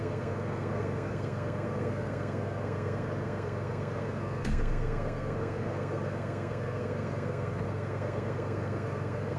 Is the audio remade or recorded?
remade